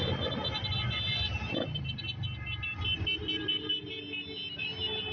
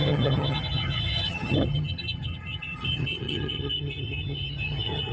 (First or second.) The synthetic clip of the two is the second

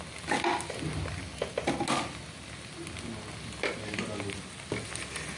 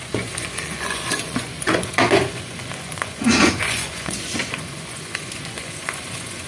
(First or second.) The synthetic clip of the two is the second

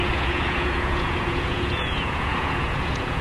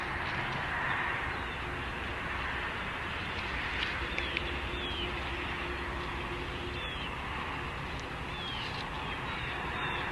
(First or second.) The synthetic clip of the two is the first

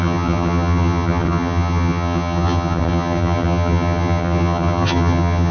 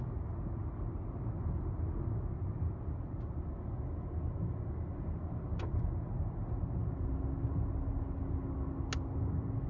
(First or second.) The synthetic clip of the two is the first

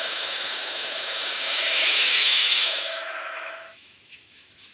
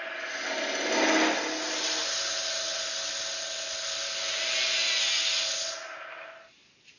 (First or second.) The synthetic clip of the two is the first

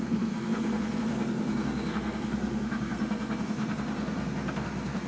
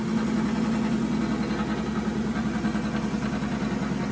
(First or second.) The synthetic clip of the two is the first